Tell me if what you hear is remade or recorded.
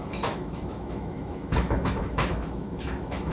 remade